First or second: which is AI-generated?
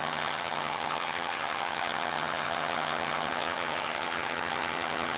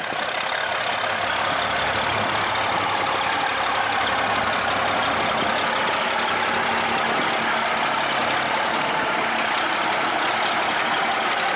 first